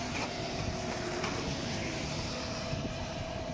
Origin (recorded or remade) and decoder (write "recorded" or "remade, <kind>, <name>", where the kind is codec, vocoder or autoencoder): remade, vocoder, BigVGAN v2